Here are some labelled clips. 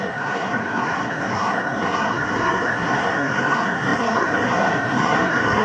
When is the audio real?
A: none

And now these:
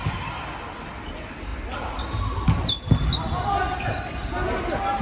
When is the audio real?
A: 0.0-5.0